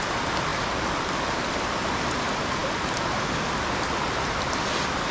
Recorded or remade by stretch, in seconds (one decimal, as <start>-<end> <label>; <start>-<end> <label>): 0.0-5.1 recorded